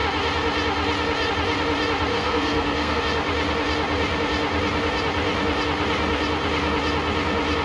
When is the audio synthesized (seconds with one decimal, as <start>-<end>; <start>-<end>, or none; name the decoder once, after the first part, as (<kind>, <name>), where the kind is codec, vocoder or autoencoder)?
2.1-3.0 (codec, SNAC)

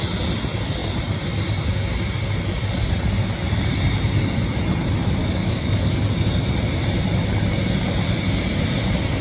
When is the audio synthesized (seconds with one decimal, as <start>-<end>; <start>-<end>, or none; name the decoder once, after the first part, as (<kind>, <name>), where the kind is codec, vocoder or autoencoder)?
5.2-5.9 (codec, DAC)

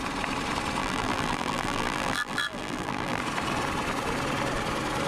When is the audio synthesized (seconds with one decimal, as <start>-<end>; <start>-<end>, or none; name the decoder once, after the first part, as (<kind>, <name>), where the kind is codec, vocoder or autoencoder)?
0.8-3.2 (vocoder, BigVGAN v2)

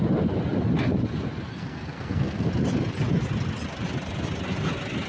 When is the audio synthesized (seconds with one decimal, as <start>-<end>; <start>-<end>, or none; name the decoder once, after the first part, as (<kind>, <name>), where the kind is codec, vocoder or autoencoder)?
1.5-2.5 (codec, SNAC)

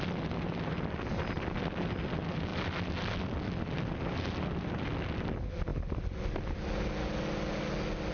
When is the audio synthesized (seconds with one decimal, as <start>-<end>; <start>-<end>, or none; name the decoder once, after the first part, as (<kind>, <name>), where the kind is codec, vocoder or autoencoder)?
none

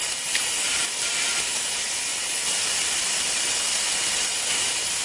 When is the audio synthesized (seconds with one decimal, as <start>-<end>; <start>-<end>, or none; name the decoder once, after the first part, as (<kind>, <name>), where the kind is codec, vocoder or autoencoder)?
none

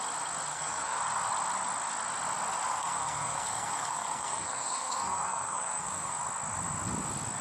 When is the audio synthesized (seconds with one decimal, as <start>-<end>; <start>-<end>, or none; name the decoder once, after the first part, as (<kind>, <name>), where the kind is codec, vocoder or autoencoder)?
0.5-1.0 (codec, SNAC); 2.7-6.2